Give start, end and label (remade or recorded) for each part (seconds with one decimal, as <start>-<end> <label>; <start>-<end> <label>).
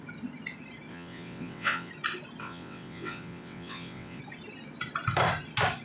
0.0-0.9 recorded; 0.9-1.9 remade; 1.9-2.4 recorded; 2.4-4.2 remade; 4.2-5.8 recorded